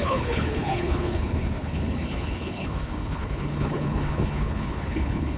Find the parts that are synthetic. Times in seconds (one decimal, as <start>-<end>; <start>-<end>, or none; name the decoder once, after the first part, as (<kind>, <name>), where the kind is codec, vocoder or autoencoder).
0.0-5.4 (codec, HILCodec)

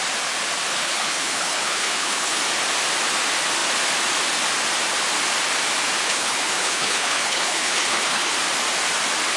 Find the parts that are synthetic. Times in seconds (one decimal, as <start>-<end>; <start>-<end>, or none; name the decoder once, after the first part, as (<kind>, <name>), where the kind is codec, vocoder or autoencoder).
0.7-2.4 (codec, HILCodec); 6.0-8.3

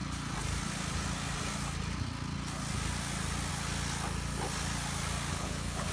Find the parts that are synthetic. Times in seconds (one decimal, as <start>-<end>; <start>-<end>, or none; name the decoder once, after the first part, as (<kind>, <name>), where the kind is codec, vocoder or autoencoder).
5.3-5.9 (codec, HILCodec)

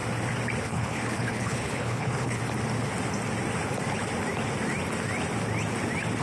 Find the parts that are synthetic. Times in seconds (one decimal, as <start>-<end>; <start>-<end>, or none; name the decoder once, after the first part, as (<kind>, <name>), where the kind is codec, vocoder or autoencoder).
0.6-2.4 (codec, HILCodec)

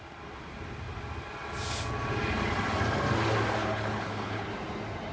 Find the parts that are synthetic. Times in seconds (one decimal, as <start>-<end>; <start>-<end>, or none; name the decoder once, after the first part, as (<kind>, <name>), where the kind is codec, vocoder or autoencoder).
3.6-4.5 (codec, HILCodec)